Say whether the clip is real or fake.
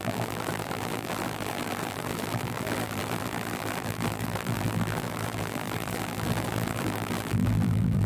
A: fake